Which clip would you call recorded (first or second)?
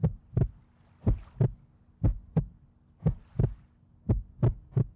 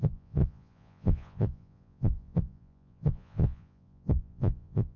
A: first